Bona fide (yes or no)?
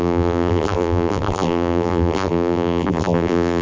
no